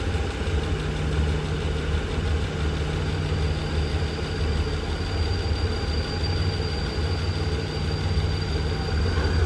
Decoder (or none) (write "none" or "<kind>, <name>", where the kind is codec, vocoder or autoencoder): none